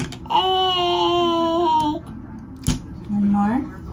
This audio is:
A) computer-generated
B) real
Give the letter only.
B